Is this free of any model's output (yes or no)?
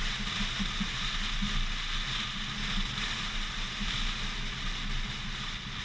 yes